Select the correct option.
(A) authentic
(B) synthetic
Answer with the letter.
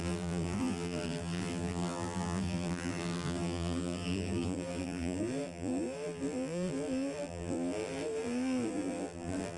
B